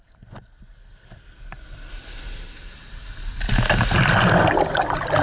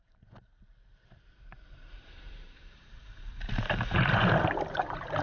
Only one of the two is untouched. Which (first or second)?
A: first